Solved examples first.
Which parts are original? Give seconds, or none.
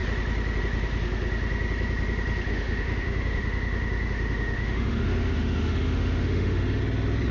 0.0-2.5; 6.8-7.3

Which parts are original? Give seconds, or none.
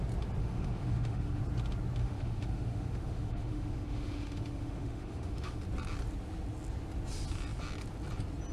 0.0-0.4; 1.4-2.0; 5.6-8.5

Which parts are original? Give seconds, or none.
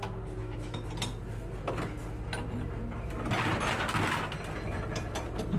0.0-0.4; 0.9-5.6